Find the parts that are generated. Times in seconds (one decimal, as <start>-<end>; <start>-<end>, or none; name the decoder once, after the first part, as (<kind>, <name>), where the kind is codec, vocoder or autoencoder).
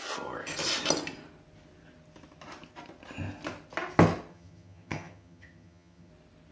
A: 4.3-6.1 (vocoder, HiFi-GAN)